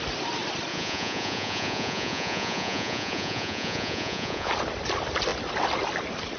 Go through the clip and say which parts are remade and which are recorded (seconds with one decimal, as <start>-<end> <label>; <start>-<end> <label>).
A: 0.0-0.7 recorded; 0.7-4.5 remade; 4.5-6.4 recorded